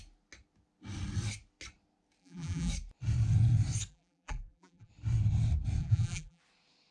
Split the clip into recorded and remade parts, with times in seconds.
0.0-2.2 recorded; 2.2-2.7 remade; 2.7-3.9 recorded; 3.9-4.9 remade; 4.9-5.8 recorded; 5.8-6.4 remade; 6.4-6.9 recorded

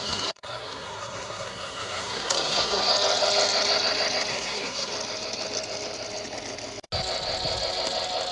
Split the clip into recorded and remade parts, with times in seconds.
0.0-2.9 remade; 2.9-4.3 recorded; 4.3-4.9 remade; 4.9-8.3 recorded

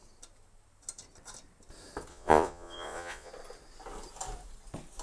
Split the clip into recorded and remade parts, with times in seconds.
0.0-2.1 recorded; 2.1-3.3 remade; 3.3-5.0 recorded